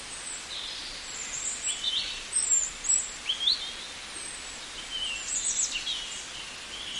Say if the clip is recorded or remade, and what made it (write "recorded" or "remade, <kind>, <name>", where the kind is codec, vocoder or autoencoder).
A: recorded